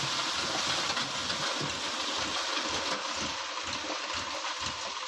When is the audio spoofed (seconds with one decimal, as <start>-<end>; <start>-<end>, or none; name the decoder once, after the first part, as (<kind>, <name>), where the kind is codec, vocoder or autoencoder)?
2.0-5.1 (vocoder, BigVGAN v2)